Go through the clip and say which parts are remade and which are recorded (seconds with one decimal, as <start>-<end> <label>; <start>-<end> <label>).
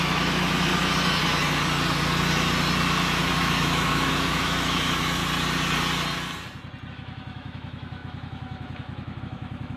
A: 0.0-0.7 remade; 0.7-3.4 recorded; 3.4-5.2 remade; 5.2-6.9 recorded; 6.9-9.8 remade